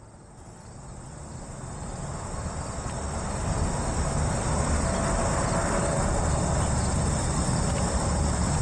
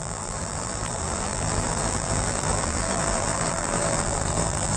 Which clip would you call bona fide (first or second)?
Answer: first